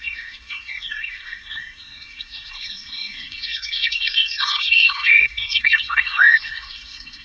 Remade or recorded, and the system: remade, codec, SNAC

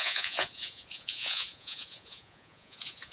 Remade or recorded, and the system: remade, vocoder, Vocos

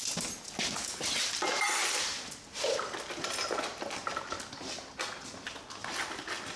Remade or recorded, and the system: recorded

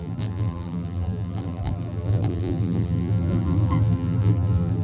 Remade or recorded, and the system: remade, vocoder, BigVGAN v2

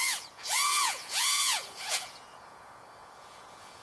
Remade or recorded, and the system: remade, vocoder, Vocos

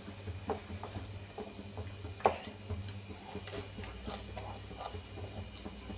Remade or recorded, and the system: recorded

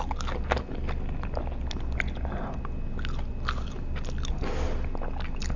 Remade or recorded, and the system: recorded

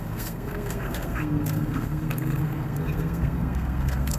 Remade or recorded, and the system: remade, codec, SNAC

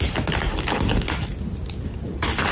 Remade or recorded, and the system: recorded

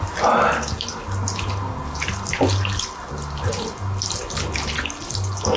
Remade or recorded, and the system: recorded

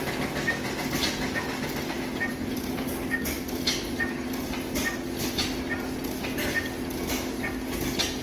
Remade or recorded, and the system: recorded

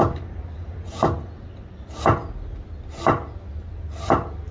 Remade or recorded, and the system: recorded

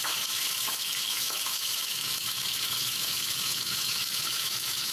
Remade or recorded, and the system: remade, autoencoder, DAC-VAE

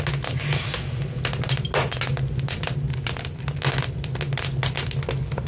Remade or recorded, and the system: recorded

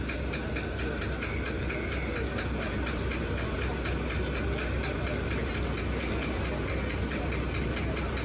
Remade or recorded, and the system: recorded